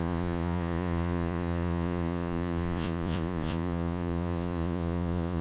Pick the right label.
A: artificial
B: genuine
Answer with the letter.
A